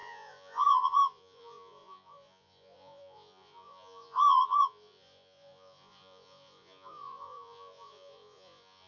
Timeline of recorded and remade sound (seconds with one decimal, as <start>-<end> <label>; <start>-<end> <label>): 0.0-8.9 remade